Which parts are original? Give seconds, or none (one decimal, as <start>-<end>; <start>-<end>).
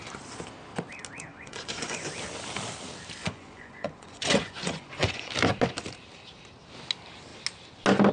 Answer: 0.0-1.3; 2.1-3.2; 5.3-8.1